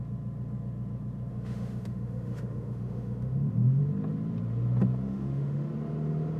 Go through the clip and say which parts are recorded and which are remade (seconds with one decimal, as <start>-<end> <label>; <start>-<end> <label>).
0.0-1.3 recorded; 1.3-3.8 remade; 3.8-5.0 recorded; 5.0-5.7 remade; 5.7-6.4 recorded